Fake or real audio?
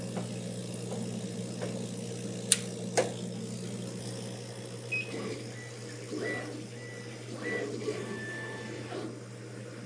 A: real